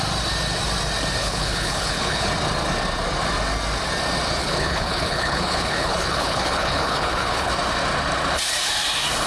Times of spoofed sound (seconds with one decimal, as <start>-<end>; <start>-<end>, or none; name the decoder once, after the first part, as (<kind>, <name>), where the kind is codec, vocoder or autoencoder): 1.2-2.3 (codec, HILCodec); 4.4-7.5